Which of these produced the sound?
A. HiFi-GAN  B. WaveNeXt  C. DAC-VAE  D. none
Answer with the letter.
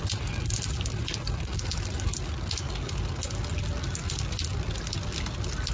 D